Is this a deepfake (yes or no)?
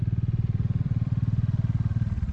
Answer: yes